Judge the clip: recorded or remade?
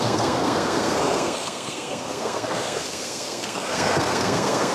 remade